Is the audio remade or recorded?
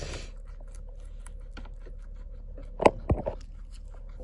recorded